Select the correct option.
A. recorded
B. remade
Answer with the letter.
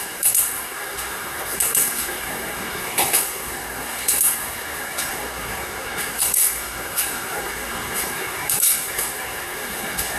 B